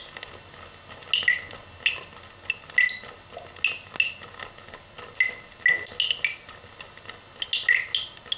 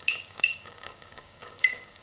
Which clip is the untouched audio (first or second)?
first